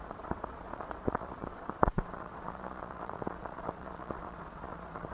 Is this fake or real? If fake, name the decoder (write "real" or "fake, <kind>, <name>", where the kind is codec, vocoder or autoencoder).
fake, vocoder, Vocos